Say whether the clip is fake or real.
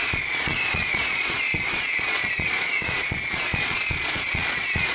fake